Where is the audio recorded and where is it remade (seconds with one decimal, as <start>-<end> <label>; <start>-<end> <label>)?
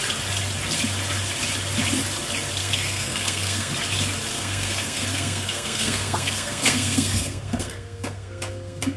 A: 0.0-2.6 recorded; 2.6-3.7 remade; 3.7-4.3 recorded; 4.3-9.0 remade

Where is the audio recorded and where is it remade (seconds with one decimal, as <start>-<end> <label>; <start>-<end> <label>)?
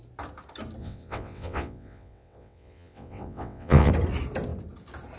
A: 0.0-0.8 recorded; 0.8-3.9 remade; 3.9-5.2 recorded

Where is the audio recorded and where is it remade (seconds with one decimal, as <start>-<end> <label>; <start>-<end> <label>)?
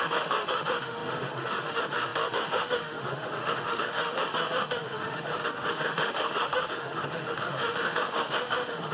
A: 0.0-8.9 remade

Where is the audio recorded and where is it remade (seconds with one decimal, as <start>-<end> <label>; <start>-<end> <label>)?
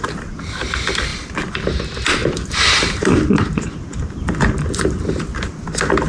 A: 0.0-1.1 recorded; 1.1-1.8 remade; 1.8-2.2 recorded; 2.2-5.2 remade; 5.2-6.1 recorded